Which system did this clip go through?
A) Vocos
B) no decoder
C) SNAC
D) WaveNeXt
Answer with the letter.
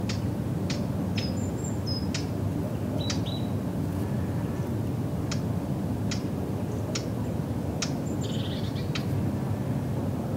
B